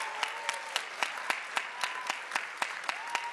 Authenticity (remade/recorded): recorded